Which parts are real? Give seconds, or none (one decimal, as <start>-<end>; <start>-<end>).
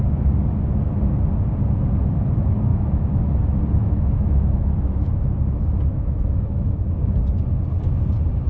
0.0-2.7; 3.3-3.8; 5.1-5.9; 6.8-8.5